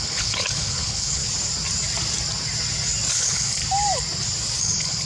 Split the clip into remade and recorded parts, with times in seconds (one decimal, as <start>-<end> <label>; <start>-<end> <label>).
0.0-1.2 remade; 1.2-3.1 recorded; 3.1-3.6 remade; 3.6-4.6 recorded; 4.6-5.1 remade